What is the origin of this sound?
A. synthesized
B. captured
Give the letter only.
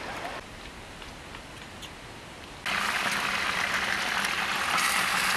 B